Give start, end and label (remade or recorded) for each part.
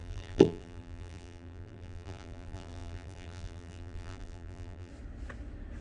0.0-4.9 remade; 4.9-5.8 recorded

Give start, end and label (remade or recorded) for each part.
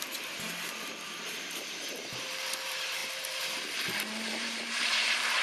0.0-3.0 remade; 3.0-4.3 recorded; 4.3-5.4 remade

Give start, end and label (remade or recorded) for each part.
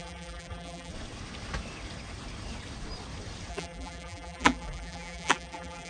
0.0-0.9 remade; 0.9-3.5 recorded; 3.5-5.9 remade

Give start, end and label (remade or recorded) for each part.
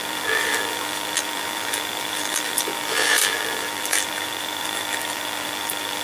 0.0-6.0 remade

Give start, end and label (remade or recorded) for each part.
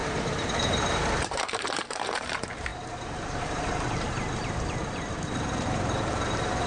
0.0-6.7 remade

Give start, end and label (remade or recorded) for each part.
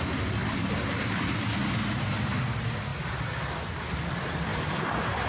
0.0-0.4 recorded; 0.4-1.3 remade; 1.3-4.5 recorded; 4.5-5.3 remade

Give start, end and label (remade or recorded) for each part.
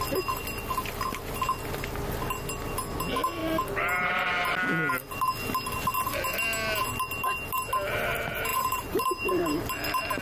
0.0-3.4 recorded; 3.4-4.3 remade; 4.3-8.5 recorded; 8.5-9.6 remade; 9.6-10.2 recorded